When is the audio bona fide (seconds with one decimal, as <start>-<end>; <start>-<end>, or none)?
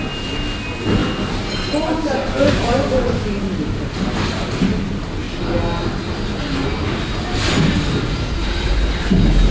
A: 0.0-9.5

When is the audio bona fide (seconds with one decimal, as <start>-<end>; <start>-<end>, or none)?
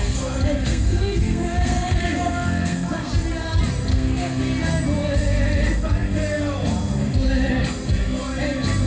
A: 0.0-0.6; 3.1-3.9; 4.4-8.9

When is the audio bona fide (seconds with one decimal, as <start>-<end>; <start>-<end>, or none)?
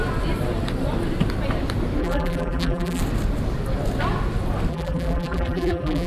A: 0.0-2.0; 3.0-4.7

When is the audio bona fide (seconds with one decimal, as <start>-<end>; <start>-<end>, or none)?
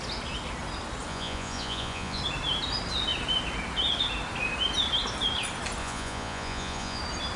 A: 0.0-1.1; 2.2-5.8; 7.0-7.4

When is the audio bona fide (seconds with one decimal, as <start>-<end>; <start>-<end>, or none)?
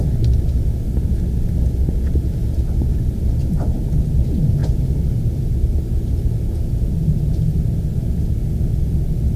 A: 0.0-9.4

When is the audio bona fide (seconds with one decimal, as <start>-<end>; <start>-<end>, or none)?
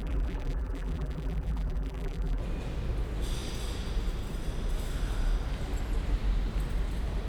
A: 2.4-7.3